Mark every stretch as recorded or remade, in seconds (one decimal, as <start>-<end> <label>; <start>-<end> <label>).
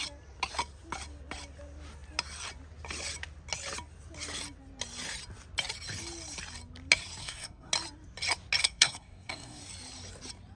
0.0-7.2 recorded; 7.2-7.7 remade; 7.7-8.6 recorded; 8.6-9.6 remade; 9.6-10.6 recorded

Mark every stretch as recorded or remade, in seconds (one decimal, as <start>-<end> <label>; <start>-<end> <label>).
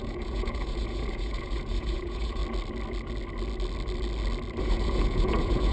0.0-2.4 remade; 2.4-4.6 recorded; 4.6-5.7 remade